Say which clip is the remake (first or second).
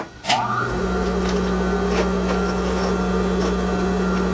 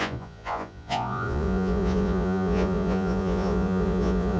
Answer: second